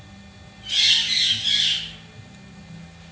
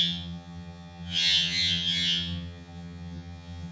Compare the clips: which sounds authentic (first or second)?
first